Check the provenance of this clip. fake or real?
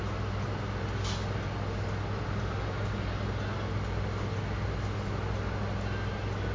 real